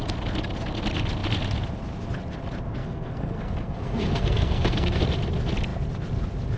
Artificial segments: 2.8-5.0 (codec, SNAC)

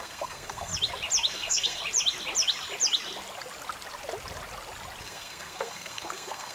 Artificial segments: 0.0-0.7 (codec, SNAC); 1.3-1.8; 5.0-6.5